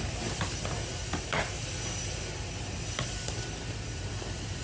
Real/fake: real